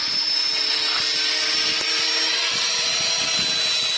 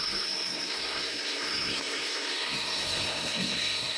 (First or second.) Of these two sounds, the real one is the first